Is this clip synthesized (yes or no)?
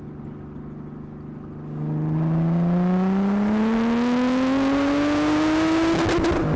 no